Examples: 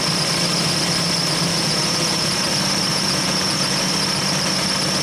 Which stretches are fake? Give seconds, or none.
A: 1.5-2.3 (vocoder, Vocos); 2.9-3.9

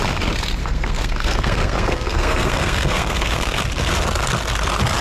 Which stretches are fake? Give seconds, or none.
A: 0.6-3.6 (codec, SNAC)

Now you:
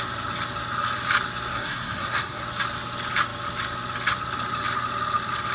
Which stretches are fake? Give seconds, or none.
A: 1.5-2.4 (codec, SNAC)

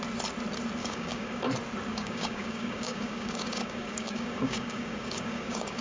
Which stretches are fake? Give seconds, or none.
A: 0.8-1.4 (codec, DAC); 1.9-5.8

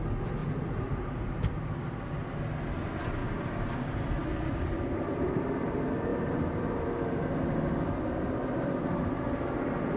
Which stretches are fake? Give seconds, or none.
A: 0.4-1.2 (vocoder, BigVGAN v2); 3.2-5.5; 6.1-6.8

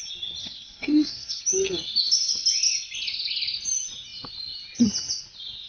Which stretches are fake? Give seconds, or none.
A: 0.4-1.4 (codec, SNAC)

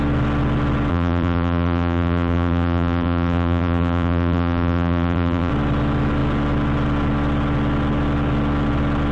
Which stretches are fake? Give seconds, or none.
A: 0.9-5.5 (vocoder, BigVGAN v2)

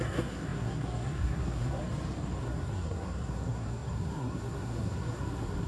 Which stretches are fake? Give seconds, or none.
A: 0.0-1.8 (codec, SNAC); 2.4-5.7